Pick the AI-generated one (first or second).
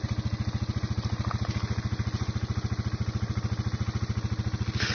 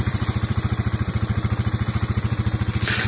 second